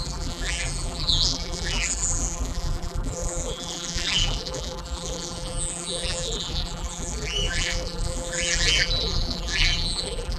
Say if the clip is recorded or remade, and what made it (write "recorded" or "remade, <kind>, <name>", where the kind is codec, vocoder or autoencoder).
remade, vocoder, BigVGAN v2